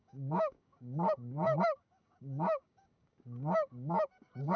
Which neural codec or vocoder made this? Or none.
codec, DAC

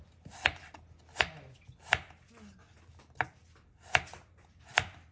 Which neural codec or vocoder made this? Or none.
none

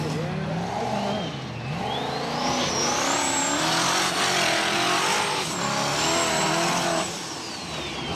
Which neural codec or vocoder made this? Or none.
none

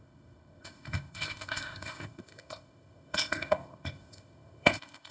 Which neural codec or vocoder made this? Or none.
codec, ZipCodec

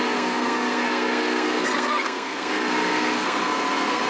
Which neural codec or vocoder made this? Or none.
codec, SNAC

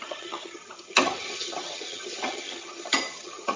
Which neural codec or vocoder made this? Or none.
vocoder, HiFi-GAN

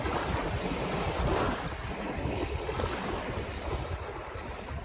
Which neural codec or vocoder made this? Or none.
none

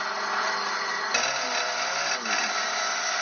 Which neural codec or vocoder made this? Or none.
none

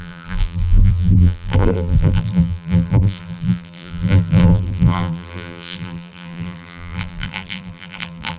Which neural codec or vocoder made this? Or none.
vocoder, BigVGAN v2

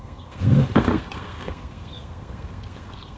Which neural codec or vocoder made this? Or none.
codec, SNAC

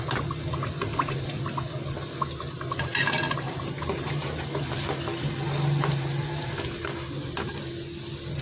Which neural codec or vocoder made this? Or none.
none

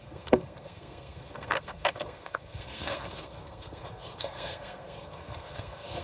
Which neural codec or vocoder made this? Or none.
codec, SNAC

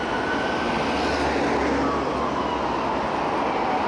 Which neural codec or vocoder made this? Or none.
none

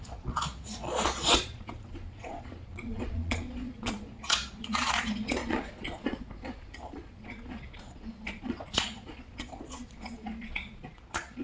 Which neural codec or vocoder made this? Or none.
vocoder, Vocos